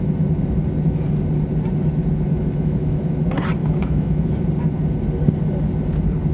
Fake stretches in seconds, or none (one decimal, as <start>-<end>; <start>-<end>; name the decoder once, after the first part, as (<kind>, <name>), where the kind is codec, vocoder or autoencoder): 2.3-3.0 (autoencoder, DAC-VAE); 3.6-4.3